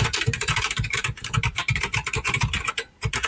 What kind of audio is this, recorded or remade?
remade